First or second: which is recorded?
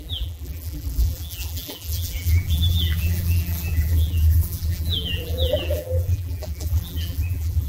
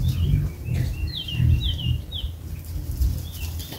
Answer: second